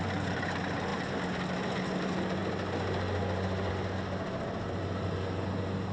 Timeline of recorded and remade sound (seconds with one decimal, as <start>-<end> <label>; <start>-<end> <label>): 0.0-5.9 recorded